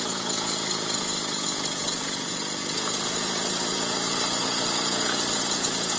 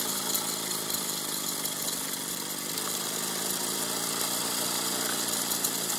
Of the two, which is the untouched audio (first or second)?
second